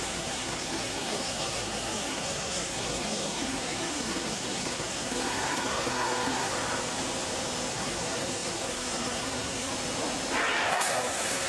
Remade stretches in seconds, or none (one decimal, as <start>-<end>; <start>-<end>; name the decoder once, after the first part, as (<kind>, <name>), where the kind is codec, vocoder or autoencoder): 0.0-6.5 (codec, SNAC); 7.7-9.7; 10.7-11.5